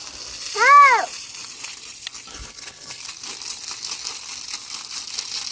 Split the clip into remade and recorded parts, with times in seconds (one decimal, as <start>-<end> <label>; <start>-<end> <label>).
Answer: 0.0-2.3 recorded; 2.3-3.0 remade; 3.0-5.5 recorded